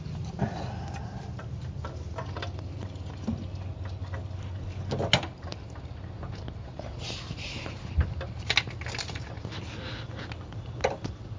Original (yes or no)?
yes